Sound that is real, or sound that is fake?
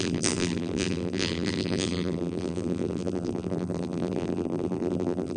fake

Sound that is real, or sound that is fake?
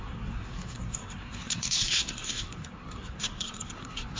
fake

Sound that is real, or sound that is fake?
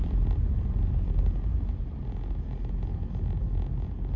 real